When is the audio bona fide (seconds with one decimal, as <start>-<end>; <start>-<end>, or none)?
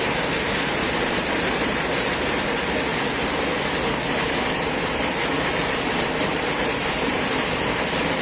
0.0-8.2